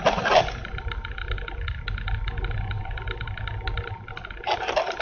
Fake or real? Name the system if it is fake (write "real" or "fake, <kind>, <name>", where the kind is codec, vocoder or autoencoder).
real